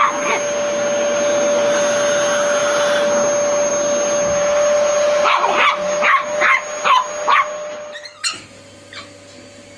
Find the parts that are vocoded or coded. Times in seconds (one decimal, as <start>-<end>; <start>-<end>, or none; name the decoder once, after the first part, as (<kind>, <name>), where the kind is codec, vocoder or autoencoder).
none